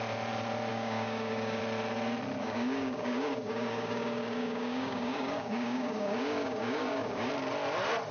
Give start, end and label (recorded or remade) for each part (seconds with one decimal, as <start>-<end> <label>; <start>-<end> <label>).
0.0-0.7 recorded; 0.7-1.6 remade; 1.6-2.4 recorded; 2.4-7.3 remade; 7.3-8.1 recorded